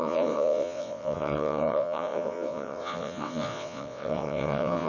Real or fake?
fake